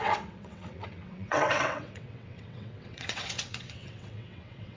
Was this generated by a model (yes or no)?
yes